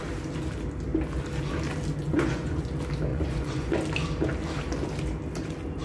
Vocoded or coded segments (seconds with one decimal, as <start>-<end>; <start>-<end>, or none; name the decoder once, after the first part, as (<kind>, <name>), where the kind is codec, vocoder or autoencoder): 2.1-2.7 (vocoder, Vocos); 3.1-3.7

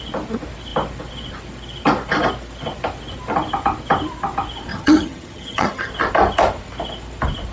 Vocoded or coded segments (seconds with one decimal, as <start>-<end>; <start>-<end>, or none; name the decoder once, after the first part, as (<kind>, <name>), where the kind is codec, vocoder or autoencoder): 4.7-5.9 (vocoder, HiFi-GAN)

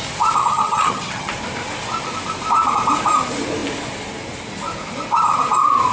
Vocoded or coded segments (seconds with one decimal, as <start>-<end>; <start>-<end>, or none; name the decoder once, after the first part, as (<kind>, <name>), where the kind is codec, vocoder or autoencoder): 0.4-1.3 (vocoder, HiFi-GAN)

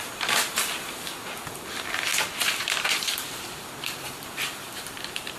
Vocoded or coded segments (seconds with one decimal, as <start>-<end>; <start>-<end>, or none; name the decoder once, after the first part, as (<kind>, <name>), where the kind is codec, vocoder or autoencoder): 2.1-5.4 (vocoder, BigVGAN v2)

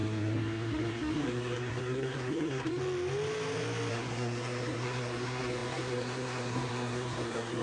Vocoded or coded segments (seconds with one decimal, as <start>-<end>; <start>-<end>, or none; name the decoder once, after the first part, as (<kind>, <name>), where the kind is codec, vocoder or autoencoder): 0.0-2.8 (codec, SNAC); 3.9-7.6